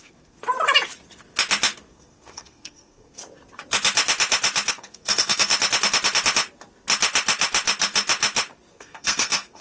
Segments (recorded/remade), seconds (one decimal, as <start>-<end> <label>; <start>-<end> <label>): 0.0-0.4 remade; 0.4-1.9 recorded; 1.9-3.2 remade; 3.2-4.7 recorded; 4.7-5.5 remade; 5.5-8.7 recorded; 8.7-9.6 remade